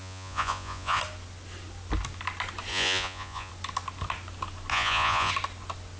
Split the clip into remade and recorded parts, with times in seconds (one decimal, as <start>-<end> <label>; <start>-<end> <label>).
0.0-1.0 remade; 1.0-2.7 recorded; 2.7-3.5 remade; 3.5-4.7 recorded; 4.7-5.3 remade; 5.3-6.0 recorded